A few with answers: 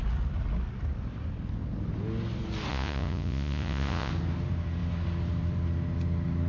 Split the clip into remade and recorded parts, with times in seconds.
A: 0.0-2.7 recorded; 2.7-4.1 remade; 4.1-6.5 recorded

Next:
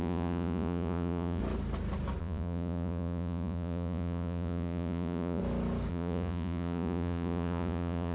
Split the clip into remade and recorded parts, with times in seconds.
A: 0.0-1.4 remade; 1.4-2.2 recorded; 2.2-5.4 remade; 5.4-5.9 recorded; 5.9-8.1 remade

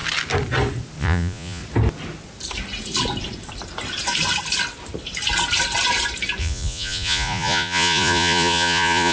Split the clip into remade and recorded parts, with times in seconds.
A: 0.0-1.0 recorded; 1.0-1.6 remade; 1.6-6.4 recorded; 6.4-9.1 remade